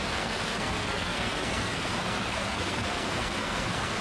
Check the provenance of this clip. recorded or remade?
remade